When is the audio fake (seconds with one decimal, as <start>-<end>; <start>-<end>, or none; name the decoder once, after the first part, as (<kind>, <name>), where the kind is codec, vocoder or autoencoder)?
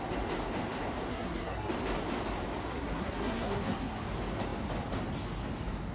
1.1-1.7 (codec, SNAC); 2.7-4.0